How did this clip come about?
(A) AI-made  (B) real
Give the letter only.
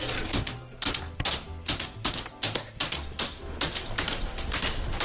B